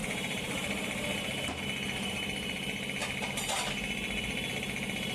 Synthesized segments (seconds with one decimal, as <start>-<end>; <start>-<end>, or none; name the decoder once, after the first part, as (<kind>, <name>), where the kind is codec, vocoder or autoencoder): 0.0-1.6 (vocoder, BigVGAN v2)